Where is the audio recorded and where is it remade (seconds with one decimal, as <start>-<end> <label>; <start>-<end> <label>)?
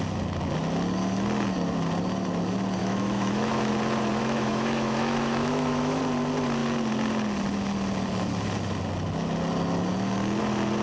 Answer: 0.0-2.8 recorded; 2.8-3.7 remade; 3.7-4.2 recorded; 4.2-6.0 remade; 6.0-10.8 recorded